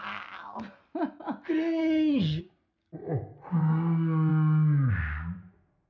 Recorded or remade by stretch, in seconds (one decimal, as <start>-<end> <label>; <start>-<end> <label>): 0.0-1.8 recorded; 1.8-2.4 remade; 2.4-5.9 recorded

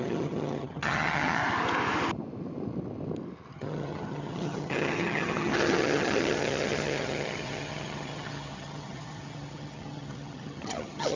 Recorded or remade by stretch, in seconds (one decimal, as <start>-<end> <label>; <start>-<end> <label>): 0.0-1.4 remade; 1.4-3.5 recorded; 3.5-11.2 remade

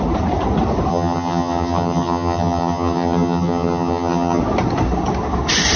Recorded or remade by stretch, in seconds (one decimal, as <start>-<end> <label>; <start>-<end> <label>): 0.0-0.9 recorded; 0.9-4.4 remade; 4.4-5.8 recorded

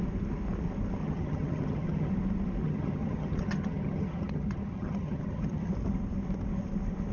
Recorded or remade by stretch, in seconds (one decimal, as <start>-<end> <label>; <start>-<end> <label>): 0.0-1.0 recorded; 1.0-2.1 remade; 2.1-2.6 recorded; 2.6-5.7 remade; 5.7-7.1 recorded

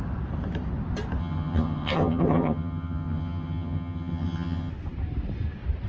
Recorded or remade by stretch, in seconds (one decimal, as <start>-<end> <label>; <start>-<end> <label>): 0.0-1.2 recorded; 1.2-4.7 remade; 4.7-5.9 recorded

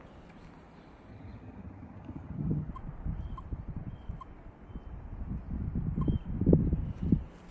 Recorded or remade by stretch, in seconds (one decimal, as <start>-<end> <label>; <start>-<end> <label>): 0.0-1.1 recorded; 1.1-2.7 remade; 2.7-7.5 recorded

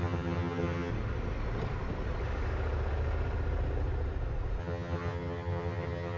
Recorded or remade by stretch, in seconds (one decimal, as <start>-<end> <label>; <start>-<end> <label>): 0.0-0.9 remade; 0.9-4.6 recorded; 4.6-6.2 remade

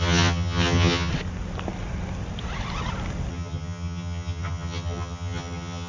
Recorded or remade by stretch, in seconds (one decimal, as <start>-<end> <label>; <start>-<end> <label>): 0.0-1.1 remade; 1.1-3.3 recorded; 3.3-5.9 remade